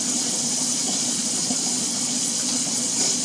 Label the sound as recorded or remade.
remade